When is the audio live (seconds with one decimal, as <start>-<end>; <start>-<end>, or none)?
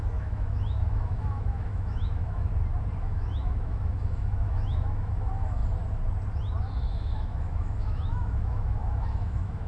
2.5-3.0; 5.6-6.8